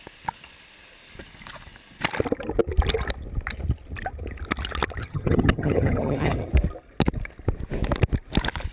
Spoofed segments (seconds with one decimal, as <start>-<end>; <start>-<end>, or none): 5.0-6.5